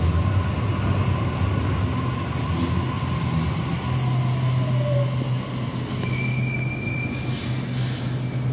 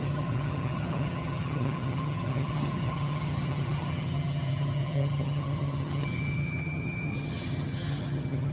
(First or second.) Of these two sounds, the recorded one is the first